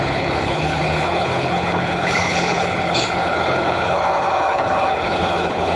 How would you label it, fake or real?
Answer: fake